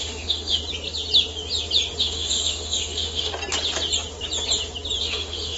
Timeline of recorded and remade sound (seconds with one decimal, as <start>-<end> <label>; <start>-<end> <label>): 0.0-0.6 remade; 0.6-2.0 recorded; 2.0-3.3 remade; 3.3-5.0 recorded; 5.0-5.6 remade

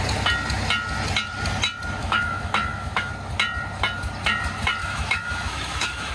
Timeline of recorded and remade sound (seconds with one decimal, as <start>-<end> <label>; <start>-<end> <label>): 0.0-2.0 recorded; 2.0-3.1 remade; 3.1-4.8 recorded; 4.8-6.1 remade